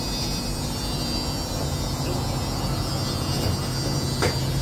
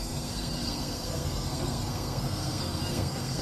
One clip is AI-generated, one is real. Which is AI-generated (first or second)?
second